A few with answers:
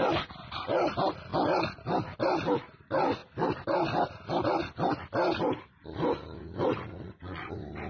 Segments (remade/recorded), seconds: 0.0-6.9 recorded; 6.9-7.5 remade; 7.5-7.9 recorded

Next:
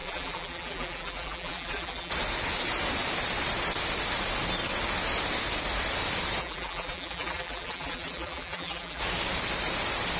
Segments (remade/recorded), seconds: 0.0-2.1 remade; 2.1-6.4 recorded; 6.4-9.0 remade; 9.0-10.2 recorded